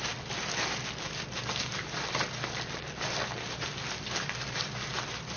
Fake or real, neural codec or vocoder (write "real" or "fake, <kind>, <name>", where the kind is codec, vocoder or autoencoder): real